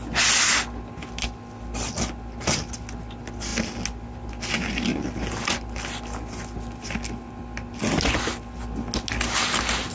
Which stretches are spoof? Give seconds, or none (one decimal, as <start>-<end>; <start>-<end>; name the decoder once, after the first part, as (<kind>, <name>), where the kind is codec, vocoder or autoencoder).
none